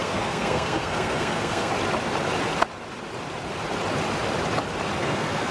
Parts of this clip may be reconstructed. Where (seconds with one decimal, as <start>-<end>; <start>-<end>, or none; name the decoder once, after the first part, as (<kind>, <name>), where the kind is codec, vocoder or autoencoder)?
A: 0.0-1.7 (codec, SNAC); 5.0-5.5